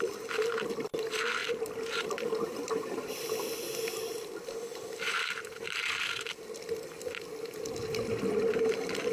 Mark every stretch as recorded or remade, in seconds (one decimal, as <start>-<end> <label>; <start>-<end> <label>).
0.0-1.4 recorded; 1.4-3.3 remade; 3.3-4.7 recorded; 4.7-6.5 remade; 6.5-9.1 recorded